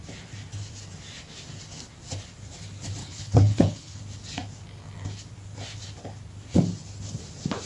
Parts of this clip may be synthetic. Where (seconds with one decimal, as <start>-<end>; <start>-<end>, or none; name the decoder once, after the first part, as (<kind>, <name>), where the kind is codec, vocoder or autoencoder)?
3.0-4.0 (codec, HILCodec)